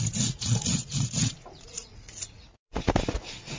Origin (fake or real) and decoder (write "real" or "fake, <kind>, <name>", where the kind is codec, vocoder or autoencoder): fake, vocoder, Vocos